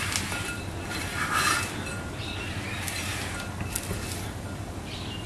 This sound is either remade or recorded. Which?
recorded